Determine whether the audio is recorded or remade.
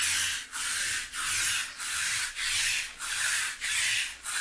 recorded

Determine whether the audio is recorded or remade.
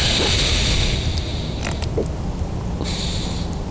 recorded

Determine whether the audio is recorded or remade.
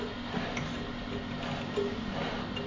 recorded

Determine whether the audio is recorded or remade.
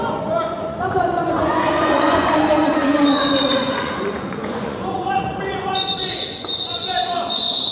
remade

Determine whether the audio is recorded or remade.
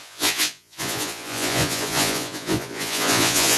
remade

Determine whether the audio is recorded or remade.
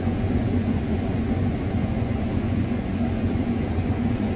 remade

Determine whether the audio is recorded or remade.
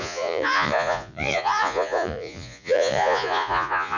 remade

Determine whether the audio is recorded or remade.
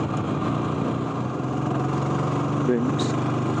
recorded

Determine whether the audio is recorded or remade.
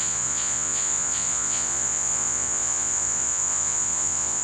remade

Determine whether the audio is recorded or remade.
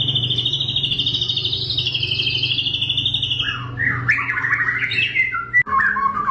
recorded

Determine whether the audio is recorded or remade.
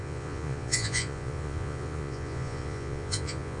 remade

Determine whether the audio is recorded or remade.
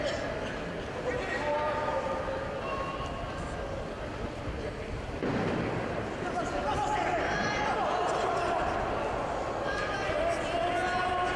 recorded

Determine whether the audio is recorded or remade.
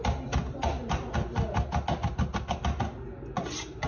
recorded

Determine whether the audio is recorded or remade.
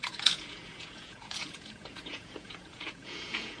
remade